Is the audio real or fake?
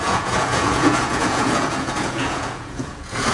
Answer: fake